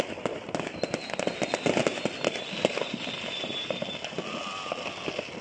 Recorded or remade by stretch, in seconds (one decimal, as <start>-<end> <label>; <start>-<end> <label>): 0.0-5.4 recorded

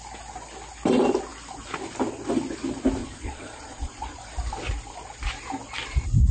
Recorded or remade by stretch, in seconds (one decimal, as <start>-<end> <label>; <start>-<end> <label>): 0.0-3.0 recorded; 3.0-4.2 remade; 4.2-6.3 recorded

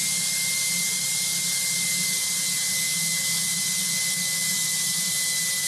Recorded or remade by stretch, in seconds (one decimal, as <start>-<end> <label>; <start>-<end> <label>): 0.0-5.7 recorded

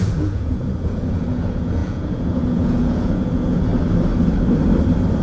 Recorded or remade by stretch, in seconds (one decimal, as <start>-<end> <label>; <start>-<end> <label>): 0.0-3.7 remade; 3.7-5.2 recorded

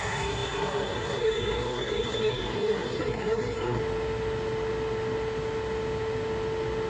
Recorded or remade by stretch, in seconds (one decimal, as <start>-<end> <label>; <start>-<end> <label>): 0.0-3.8 remade; 3.8-6.9 recorded